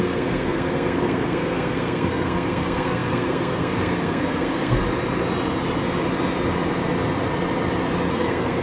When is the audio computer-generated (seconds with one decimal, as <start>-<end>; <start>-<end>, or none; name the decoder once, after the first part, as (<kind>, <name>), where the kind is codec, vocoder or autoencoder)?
0.0-4.8 (codec, SNAC); 8.1-8.6